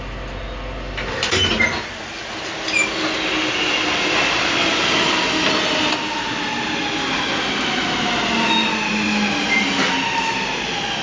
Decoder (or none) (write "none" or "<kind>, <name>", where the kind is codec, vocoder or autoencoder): none